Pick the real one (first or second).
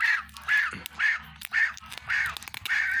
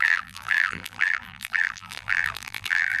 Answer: first